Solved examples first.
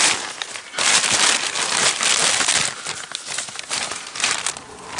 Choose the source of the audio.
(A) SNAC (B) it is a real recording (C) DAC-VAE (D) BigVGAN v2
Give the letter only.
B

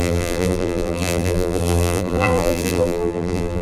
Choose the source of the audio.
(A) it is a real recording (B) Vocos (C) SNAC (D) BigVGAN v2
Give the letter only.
D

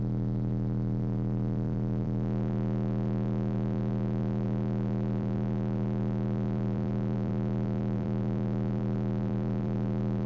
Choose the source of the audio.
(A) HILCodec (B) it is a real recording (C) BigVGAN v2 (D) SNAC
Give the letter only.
C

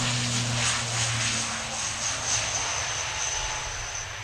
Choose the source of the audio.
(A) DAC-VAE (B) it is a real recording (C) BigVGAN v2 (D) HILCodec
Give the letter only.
B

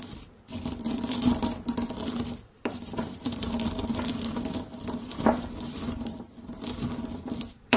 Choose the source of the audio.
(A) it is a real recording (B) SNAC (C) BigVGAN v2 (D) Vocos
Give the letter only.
C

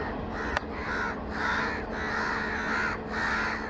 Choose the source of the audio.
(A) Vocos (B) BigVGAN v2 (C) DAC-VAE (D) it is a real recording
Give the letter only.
D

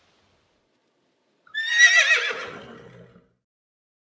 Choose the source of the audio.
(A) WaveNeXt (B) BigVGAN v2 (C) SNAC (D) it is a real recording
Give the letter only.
D